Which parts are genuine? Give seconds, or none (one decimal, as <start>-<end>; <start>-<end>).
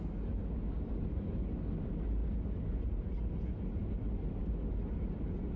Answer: 0.0-5.6